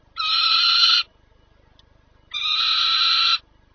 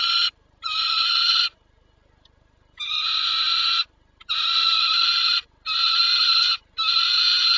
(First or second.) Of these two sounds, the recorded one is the first